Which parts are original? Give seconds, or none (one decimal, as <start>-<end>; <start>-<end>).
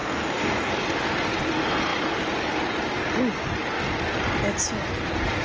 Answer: 0.7-5.4